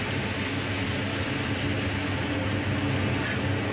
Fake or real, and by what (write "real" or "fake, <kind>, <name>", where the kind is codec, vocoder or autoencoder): real